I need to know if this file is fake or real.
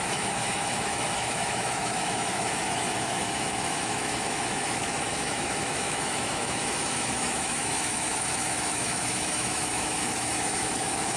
fake